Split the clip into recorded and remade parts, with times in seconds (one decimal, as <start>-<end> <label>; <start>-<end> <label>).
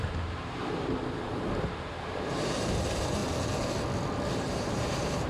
0.0-3.2 remade; 3.2-4.3 recorded; 4.3-5.3 remade